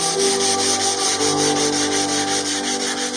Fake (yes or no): no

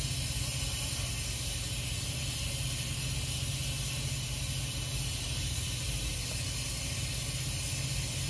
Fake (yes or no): no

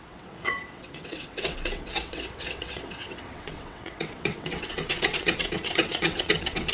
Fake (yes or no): yes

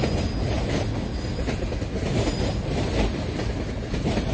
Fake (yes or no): no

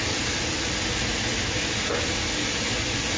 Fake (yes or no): no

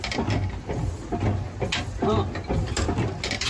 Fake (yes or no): no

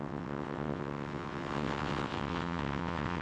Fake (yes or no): yes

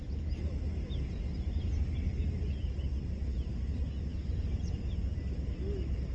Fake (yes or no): no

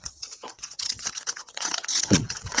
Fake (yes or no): yes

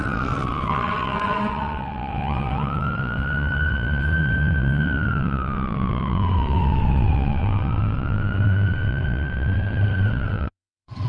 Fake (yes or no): yes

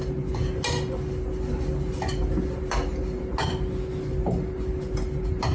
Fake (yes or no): no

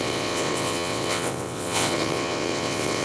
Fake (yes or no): yes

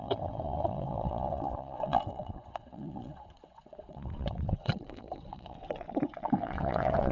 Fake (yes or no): yes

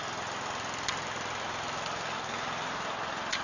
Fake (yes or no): no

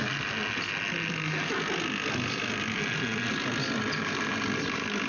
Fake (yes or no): no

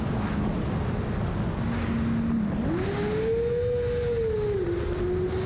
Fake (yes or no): no